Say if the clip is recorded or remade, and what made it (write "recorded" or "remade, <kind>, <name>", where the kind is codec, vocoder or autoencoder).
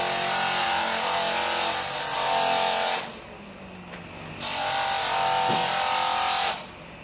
recorded